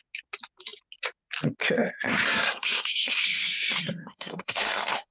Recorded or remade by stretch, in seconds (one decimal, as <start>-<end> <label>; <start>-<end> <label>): 0.0-2.1 recorded; 2.1-5.1 remade

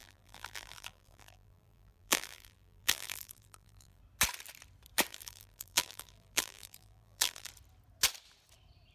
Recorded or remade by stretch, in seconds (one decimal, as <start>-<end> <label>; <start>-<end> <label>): 0.0-4.0 remade; 4.0-5.1 recorded; 5.1-7.5 remade; 7.5-8.9 recorded

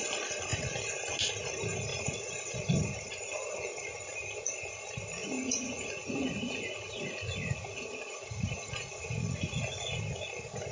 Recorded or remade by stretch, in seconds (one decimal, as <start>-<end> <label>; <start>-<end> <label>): 0.0-1.9 recorded; 1.9-2.5 remade; 2.5-5.2 recorded; 5.2-10.0 remade; 10.0-10.7 recorded

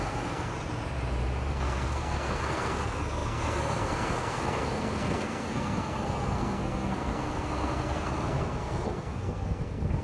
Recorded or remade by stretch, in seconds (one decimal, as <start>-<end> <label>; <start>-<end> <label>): 0.0-0.5 remade; 0.5-1.5 recorded; 1.5-10.0 remade

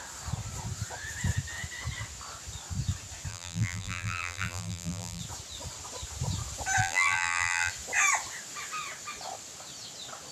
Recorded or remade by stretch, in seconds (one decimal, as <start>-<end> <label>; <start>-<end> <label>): 0.0-3.3 recorded; 3.3-5.2 remade; 5.2-6.8 recorded; 6.8-7.7 remade; 7.7-10.3 recorded

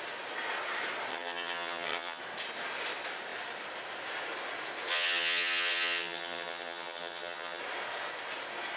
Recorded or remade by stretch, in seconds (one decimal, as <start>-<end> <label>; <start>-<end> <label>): 0.0-1.1 recorded; 1.1-2.2 remade; 2.2-4.9 recorded; 4.9-7.6 remade; 7.6-8.8 recorded

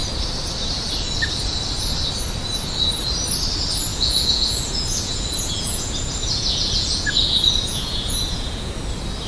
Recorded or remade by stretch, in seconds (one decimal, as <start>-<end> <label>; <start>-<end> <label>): 0.0-3.9 recorded; 3.9-8.7 remade; 8.7-9.3 recorded

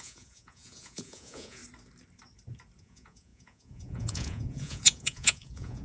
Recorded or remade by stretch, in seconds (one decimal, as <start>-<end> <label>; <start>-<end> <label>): 0.0-1.6 remade; 1.6-2.8 recorded; 2.8-5.8 remade